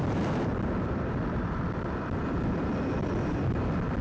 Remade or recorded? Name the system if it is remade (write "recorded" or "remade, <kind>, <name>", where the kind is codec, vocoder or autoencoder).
remade, vocoder, BigVGAN v2